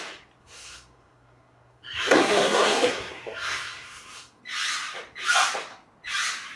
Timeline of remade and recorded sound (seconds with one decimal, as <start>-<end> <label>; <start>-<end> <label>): 0.0-0.4 recorded; 0.4-4.4 remade; 4.4-6.6 recorded